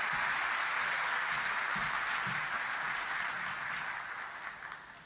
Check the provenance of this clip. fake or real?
real